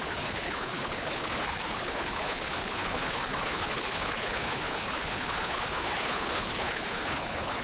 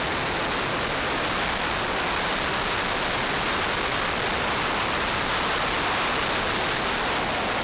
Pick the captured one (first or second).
second